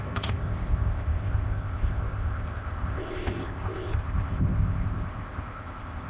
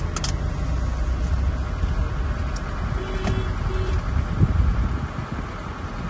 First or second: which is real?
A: second